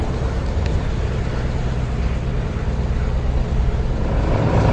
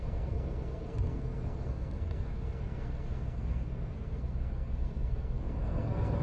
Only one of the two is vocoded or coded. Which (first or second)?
second